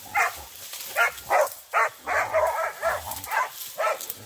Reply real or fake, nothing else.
real